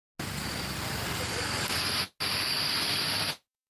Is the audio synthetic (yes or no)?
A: no